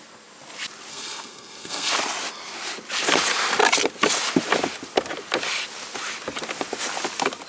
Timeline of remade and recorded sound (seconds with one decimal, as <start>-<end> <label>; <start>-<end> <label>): 0.0-0.9 recorded; 0.9-1.9 remade; 1.9-7.5 recorded